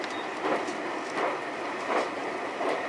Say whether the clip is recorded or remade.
recorded